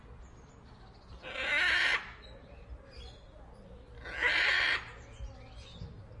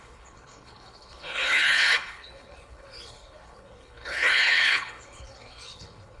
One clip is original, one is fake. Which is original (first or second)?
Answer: first